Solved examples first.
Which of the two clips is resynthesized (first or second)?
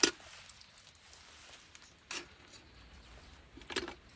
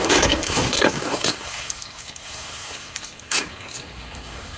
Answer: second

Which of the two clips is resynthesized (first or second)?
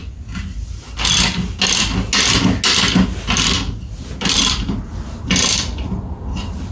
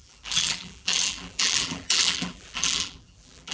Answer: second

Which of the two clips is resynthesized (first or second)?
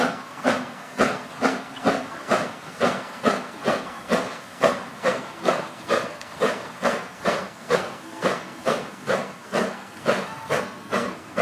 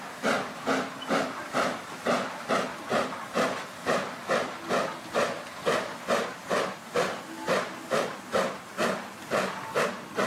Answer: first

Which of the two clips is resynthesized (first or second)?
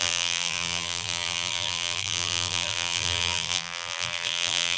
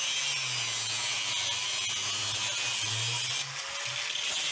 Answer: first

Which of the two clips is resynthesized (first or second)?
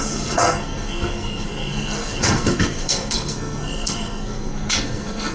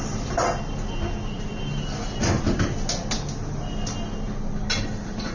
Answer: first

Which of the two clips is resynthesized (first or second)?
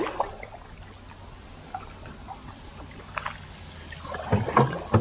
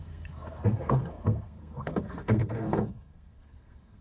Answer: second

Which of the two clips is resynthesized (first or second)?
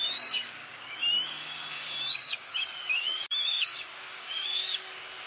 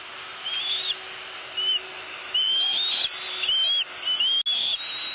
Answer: first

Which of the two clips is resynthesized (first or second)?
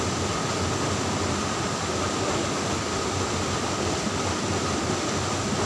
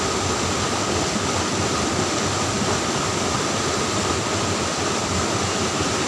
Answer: second